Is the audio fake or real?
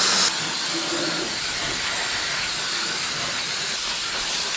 real